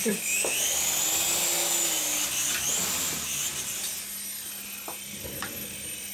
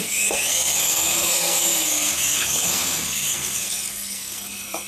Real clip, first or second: first